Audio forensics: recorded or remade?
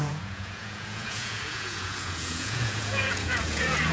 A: remade